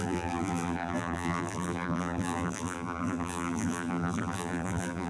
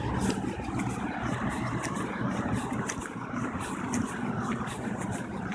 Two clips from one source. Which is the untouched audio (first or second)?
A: second